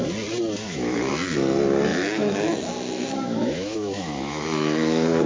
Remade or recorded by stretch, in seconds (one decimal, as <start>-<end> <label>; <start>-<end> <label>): 0.0-0.6 recorded; 0.6-1.1 remade; 1.1-1.9 recorded; 1.9-5.3 remade